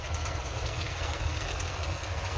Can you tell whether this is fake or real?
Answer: fake